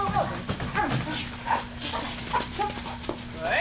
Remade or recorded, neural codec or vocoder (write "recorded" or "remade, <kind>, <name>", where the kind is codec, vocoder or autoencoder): recorded